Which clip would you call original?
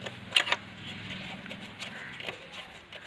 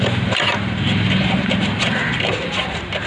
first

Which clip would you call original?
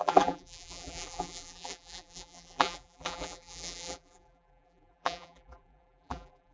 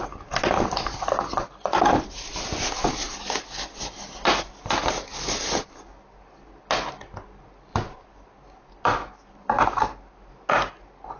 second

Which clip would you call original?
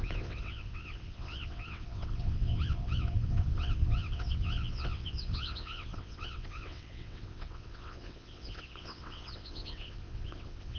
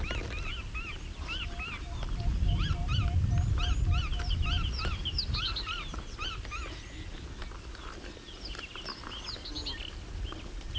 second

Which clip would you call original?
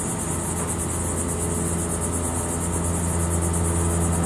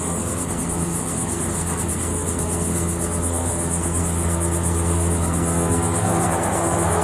first